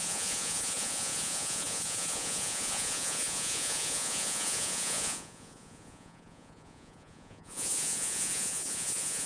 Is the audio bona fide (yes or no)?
no